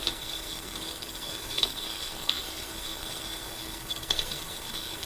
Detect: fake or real fake